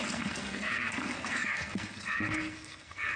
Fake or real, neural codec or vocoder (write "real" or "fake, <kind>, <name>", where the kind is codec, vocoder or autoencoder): fake, codec, SNAC